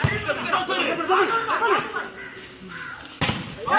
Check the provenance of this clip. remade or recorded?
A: recorded